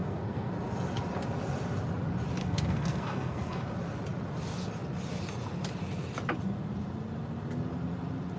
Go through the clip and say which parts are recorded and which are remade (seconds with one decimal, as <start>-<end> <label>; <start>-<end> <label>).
0.0-0.5 remade; 0.5-2.4 recorded; 2.4-3.6 remade; 3.6-8.4 recorded